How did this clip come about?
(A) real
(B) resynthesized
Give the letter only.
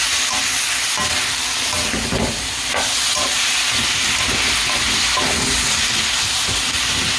A